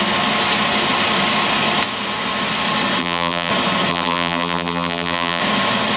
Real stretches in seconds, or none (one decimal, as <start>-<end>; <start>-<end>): 0.0-3.0; 3.5-3.9; 5.4-6.0